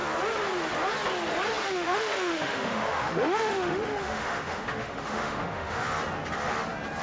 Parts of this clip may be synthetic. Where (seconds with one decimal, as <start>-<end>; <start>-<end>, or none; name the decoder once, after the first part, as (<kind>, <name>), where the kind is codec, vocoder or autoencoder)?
1.6-5.8 (autoencoder, DAC-VAE)